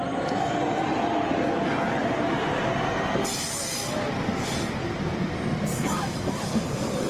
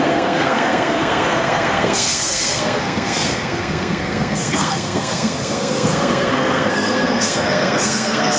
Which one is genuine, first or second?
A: first